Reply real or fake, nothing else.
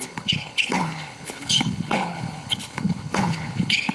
fake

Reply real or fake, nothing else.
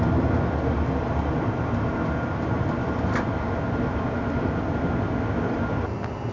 real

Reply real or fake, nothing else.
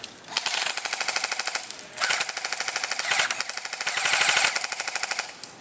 real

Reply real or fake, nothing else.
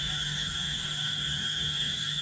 fake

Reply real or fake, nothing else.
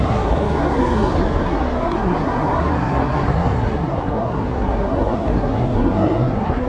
fake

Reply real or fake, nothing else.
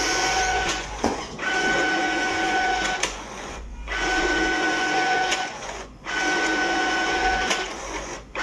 fake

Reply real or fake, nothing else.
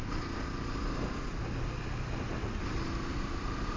real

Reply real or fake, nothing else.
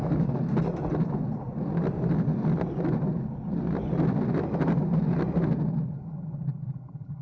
real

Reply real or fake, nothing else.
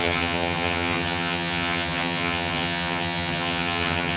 fake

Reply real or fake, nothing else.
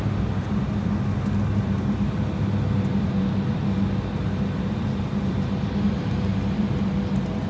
real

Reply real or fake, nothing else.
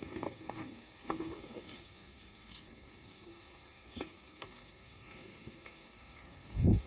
fake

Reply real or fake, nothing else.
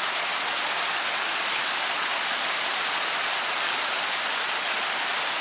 real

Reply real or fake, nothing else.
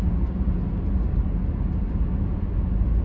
real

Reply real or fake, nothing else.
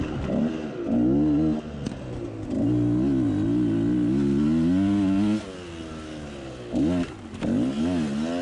real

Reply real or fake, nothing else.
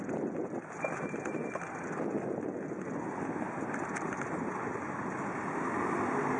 real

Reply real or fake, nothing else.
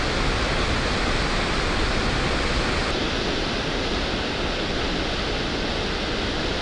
real